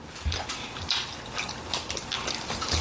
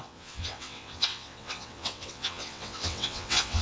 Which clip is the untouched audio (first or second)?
first